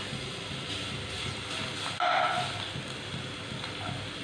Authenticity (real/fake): real